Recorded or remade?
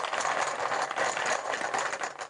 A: recorded